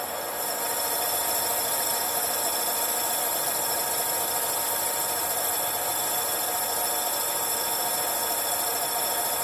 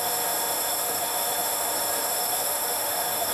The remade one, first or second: second